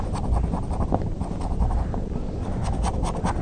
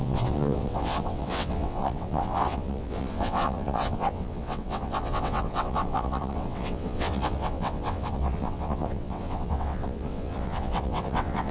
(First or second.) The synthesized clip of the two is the second